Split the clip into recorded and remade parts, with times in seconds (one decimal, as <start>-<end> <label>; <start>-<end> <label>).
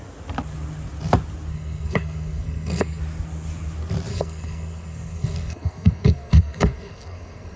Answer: 0.0-1.5 recorded; 1.5-3.0 remade; 3.0-4.1 recorded; 4.1-7.6 remade